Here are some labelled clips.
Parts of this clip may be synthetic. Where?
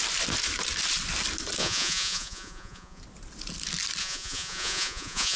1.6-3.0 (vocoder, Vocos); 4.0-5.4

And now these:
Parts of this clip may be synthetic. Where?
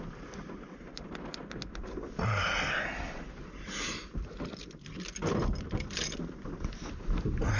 none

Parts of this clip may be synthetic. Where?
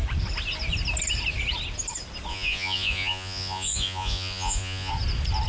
2.3-4.9 (vocoder, Vocos)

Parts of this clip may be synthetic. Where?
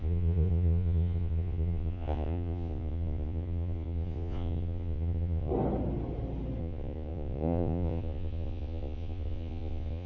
0.0-5.5 (vocoder, Vocos); 6.6-10.1